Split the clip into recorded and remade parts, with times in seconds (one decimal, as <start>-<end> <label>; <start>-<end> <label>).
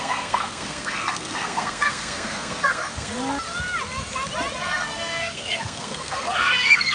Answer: 0.0-3.1 remade; 3.1-4.6 recorded; 4.6-6.9 remade